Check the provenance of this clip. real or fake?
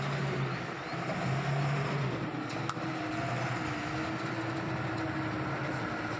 real